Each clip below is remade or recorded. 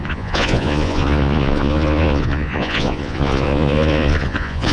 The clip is remade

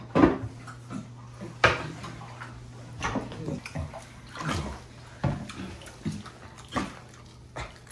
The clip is recorded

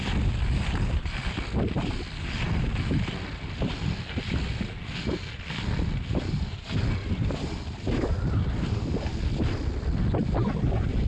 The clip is recorded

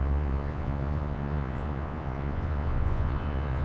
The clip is remade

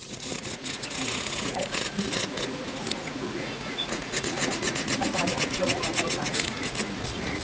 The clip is remade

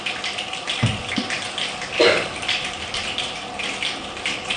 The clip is recorded